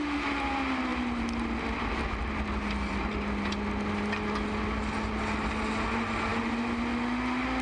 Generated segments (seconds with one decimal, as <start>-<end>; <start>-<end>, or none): none